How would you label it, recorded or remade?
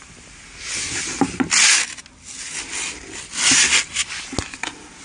recorded